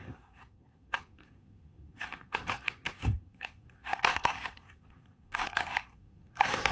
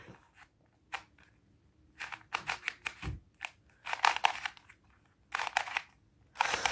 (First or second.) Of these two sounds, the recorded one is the second